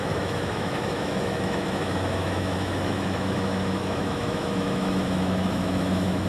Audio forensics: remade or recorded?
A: remade